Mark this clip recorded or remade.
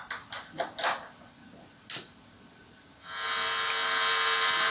recorded